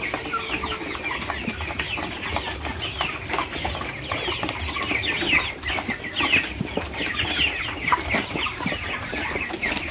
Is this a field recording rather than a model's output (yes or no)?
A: yes